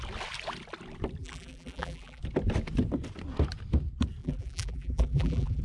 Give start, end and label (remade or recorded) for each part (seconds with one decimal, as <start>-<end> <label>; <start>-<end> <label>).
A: 0.0-1.2 recorded; 1.2-2.2 remade; 2.2-4.2 recorded; 4.2-5.6 remade